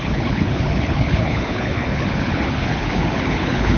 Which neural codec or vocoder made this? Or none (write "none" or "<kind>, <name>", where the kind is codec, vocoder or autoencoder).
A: codec, HILCodec